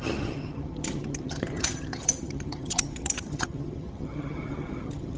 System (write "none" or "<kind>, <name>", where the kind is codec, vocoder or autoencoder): vocoder, HiFi-GAN